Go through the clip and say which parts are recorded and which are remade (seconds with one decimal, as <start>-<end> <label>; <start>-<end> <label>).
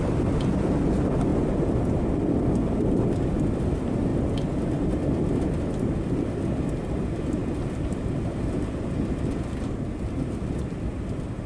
0.0-11.5 recorded